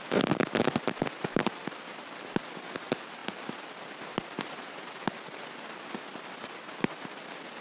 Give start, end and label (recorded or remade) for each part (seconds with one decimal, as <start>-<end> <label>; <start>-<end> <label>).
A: 0.0-7.6 recorded